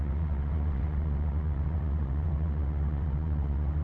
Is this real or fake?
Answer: fake